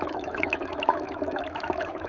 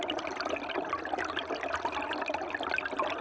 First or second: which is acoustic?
second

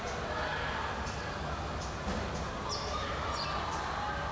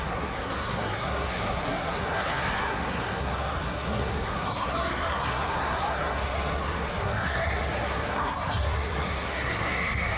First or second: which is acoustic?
first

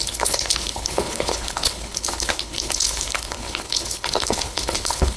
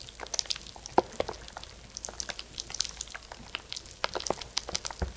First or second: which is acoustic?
second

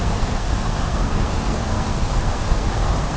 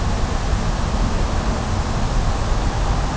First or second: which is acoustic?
second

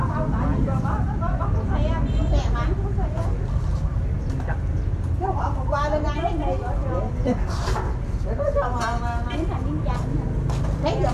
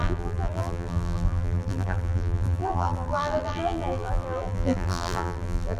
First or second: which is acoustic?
first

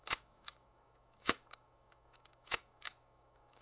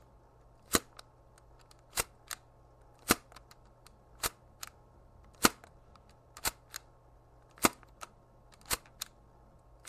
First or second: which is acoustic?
second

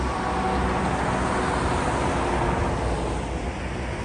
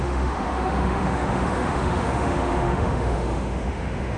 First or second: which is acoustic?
first